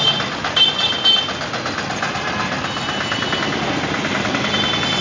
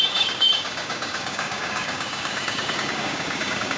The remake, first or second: second